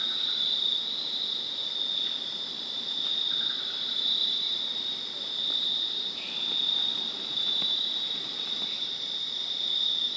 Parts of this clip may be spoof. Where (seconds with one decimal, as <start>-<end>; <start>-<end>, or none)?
0.0-0.7; 2.2-10.2